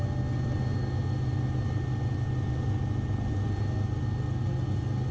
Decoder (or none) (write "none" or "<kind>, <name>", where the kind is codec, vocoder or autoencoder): none